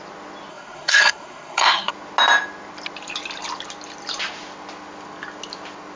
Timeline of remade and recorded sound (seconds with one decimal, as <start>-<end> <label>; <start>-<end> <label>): 0.0-0.5 recorded; 0.5-1.9 remade; 1.9-6.0 recorded